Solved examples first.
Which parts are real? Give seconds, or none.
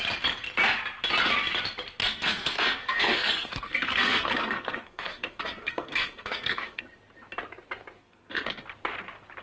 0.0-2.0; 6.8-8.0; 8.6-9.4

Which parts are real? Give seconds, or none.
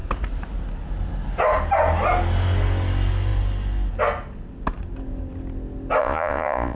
0.0-6.0